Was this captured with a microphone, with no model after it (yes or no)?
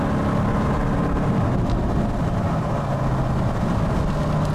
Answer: yes